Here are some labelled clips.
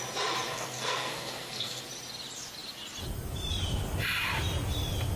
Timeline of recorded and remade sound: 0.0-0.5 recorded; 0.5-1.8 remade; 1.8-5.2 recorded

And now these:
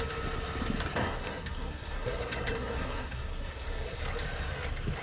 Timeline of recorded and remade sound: 0.0-1.0 recorded; 1.0-4.0 remade; 4.0-5.0 recorded

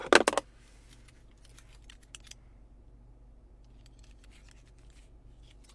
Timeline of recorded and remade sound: 0.0-5.7 recorded

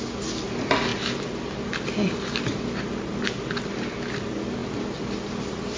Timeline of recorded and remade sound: 0.0-5.8 recorded